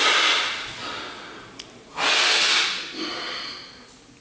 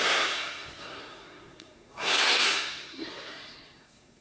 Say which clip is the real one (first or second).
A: first